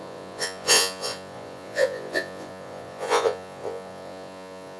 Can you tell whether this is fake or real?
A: fake